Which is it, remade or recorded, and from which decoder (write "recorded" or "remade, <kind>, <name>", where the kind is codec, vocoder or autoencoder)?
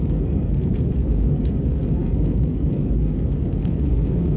remade, codec, SNAC